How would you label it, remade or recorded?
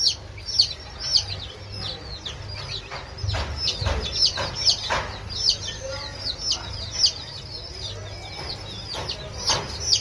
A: recorded